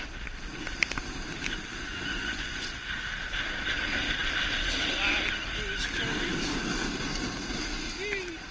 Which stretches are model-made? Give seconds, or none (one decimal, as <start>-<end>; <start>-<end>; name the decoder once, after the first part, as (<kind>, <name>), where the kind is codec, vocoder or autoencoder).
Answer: 2.2-3.0 (vocoder, Vocos)